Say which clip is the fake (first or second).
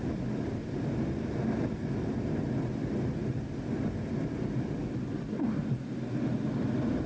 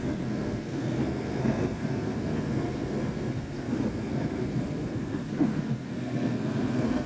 second